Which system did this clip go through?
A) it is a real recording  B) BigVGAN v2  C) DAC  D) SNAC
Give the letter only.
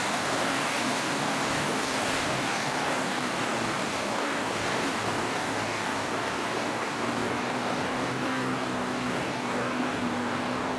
C